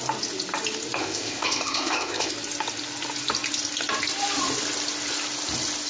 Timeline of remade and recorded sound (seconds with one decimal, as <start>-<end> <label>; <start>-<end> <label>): 0.0-1.0 recorded; 1.0-2.3 remade; 2.3-5.9 recorded